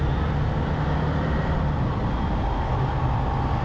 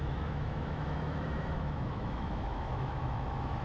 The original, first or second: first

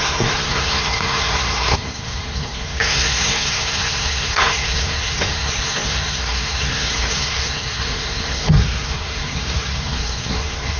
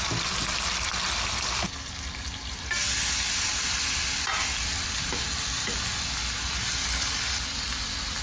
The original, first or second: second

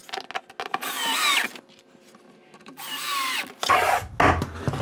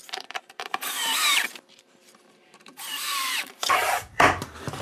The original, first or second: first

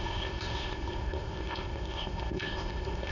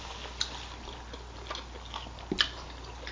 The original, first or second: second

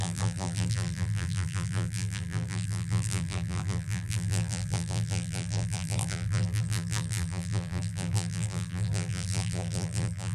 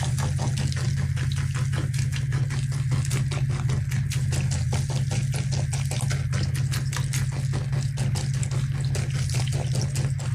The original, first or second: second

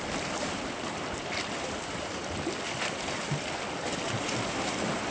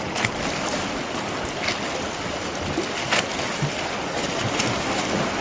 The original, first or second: second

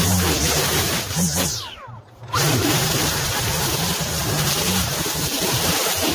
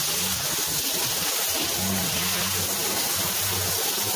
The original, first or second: second